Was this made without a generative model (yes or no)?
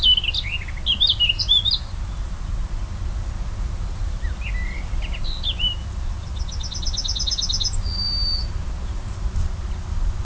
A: yes